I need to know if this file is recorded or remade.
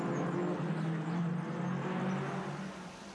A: recorded